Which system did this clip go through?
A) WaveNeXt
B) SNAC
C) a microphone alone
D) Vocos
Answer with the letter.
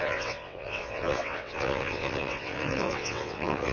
A